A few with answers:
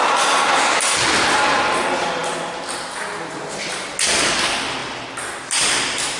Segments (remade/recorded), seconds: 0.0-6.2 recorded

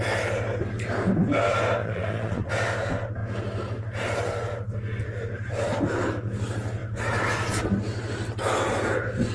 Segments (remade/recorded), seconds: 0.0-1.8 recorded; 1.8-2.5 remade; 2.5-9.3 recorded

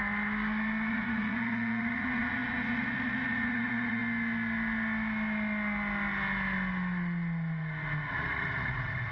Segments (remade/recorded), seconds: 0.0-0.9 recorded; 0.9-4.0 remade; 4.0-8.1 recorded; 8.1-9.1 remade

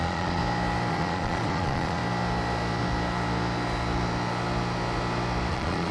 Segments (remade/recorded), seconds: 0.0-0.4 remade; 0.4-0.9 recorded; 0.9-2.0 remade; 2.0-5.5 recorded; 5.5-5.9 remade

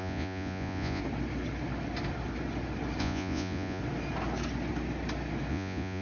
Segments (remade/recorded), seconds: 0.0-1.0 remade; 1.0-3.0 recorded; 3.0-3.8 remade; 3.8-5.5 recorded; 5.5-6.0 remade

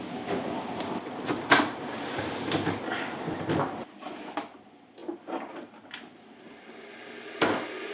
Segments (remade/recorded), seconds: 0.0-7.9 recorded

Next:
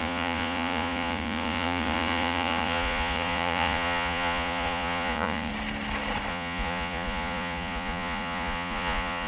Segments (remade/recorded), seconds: 0.0-5.5 remade; 5.5-6.3 recorded; 6.3-9.3 remade

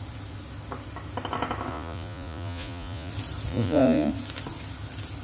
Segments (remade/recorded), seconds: 0.0-1.7 recorded; 1.7-3.1 remade; 3.1-3.5 recorded; 3.5-4.1 remade; 4.1-5.2 recorded